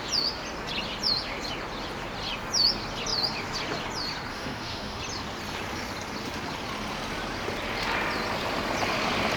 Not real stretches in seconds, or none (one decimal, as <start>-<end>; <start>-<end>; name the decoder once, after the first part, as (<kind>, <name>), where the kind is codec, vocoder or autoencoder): 4.3-5.0 (autoencoder, DAC-VAE)